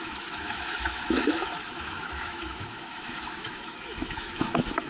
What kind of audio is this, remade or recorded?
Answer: remade